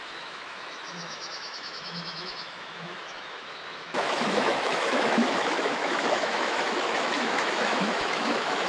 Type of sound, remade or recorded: remade